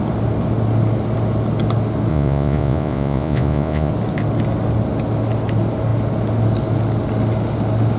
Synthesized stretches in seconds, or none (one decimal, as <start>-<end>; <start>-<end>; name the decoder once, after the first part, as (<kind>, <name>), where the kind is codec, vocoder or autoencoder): 2.1-3.9 (vocoder, Vocos)